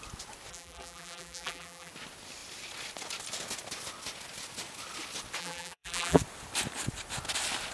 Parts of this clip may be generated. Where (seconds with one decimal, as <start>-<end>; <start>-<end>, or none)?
0.5-1.9; 5.4-6.2

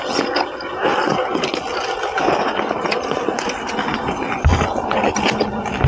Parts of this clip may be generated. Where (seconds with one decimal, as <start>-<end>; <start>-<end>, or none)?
none

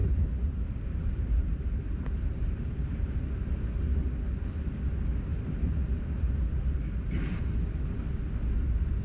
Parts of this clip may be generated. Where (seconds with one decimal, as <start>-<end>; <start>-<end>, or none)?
0.0-3.3

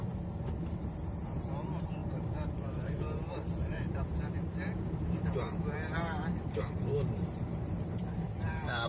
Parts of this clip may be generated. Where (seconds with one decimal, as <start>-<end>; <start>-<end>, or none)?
0.0-2.0; 2.7-8.9

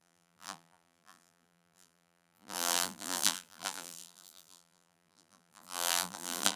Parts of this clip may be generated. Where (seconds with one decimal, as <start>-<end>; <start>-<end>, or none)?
0.0-6.6

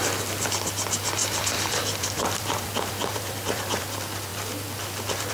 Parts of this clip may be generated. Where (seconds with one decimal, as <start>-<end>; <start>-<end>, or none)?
1.2-3.8

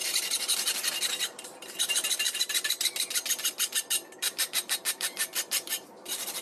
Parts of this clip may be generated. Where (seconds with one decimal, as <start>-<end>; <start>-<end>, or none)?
0.0-6.4